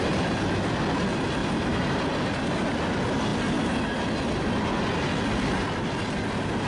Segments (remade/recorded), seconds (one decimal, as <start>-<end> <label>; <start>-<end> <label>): 0.0-1.4 recorded; 1.4-2.0 remade; 2.0-6.7 recorded